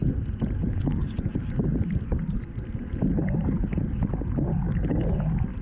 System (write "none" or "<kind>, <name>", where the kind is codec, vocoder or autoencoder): none